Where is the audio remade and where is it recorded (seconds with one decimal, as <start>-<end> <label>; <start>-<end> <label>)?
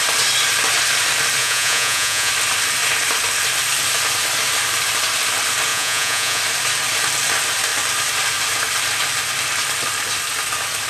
0.0-1.4 recorded; 1.4-2.3 remade; 2.3-5.7 recorded; 5.7-6.4 remade; 6.4-10.9 recorded